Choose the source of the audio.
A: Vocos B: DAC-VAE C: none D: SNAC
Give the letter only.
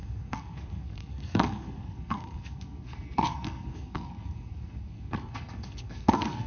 D